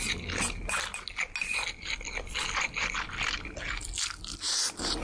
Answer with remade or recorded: recorded